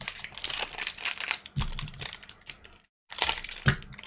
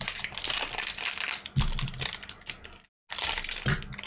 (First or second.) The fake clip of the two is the first